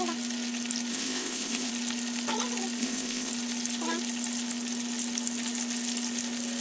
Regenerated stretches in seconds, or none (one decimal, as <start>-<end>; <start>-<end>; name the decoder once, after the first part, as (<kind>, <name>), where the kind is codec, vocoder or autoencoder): 0.9-1.7 (codec, ZipCodec); 2.8-3.3